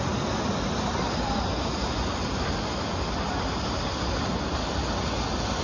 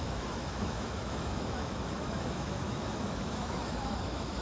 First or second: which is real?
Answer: first